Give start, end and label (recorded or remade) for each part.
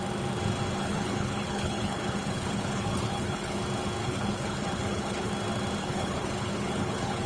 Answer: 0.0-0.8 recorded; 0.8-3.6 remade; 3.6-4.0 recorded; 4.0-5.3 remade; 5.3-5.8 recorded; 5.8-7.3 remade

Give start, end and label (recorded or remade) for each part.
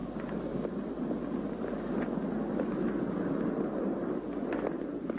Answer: 0.0-5.2 recorded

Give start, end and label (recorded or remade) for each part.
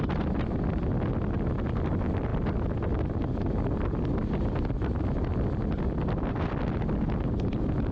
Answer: 0.0-7.9 recorded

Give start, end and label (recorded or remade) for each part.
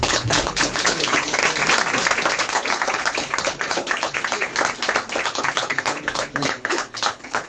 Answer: 0.0-1.4 remade; 1.4-2.4 recorded; 2.4-4.5 remade; 4.5-5.2 recorded; 5.2-7.5 remade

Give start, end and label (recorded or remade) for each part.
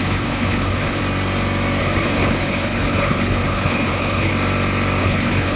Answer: 0.0-1.0 remade; 1.0-1.8 recorded; 1.8-4.3 remade; 4.3-5.0 recorded; 5.0-5.6 remade